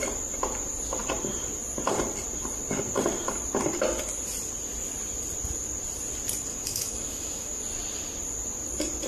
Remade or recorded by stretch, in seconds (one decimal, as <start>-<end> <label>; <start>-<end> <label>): 0.0-6.5 recorded; 6.5-7.6 remade; 7.6-9.1 recorded